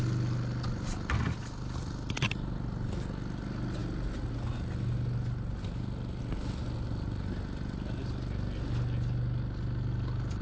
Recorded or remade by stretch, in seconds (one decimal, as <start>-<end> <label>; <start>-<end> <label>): 0.0-10.4 recorded